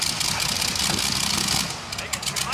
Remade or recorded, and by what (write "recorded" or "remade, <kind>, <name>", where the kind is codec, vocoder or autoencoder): recorded